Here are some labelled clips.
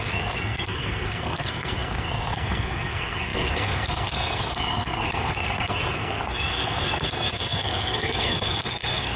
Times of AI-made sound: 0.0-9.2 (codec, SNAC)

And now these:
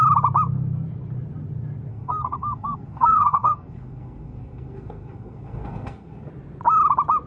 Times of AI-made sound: 1.9-6.3 (codec, SNAC)

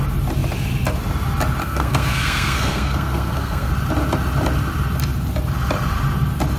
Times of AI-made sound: 1.6-3.7 (codec, SNAC)

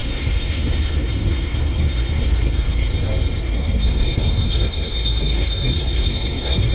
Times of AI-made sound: 0.0-2.9 (codec, SNAC); 3.4-6.7

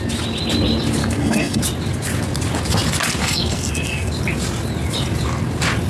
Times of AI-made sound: 1.0-1.6 (codec, SNAC); 3.2-4.1

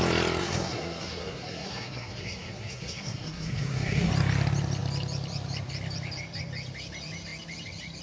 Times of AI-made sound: 0.4-4.1 (codec, SNAC)

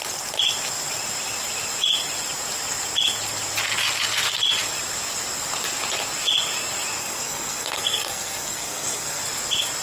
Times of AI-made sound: 7.0-9.2 (codec, SNAC)